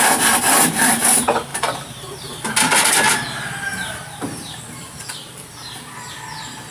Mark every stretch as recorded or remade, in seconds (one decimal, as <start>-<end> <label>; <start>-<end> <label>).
0.0-1.5 recorded; 1.5-2.5 remade; 2.5-3.7 recorded; 3.7-6.1 remade; 6.1-6.7 recorded